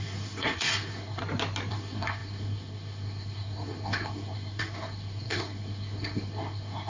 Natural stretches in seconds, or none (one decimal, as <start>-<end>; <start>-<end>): 1.2-1.7